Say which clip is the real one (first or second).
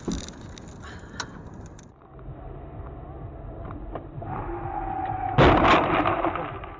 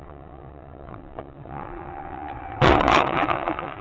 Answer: first